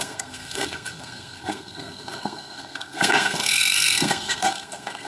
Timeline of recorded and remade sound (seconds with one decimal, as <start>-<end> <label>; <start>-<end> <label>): 0.0-5.1 remade